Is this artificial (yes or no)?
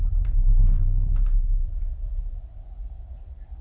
no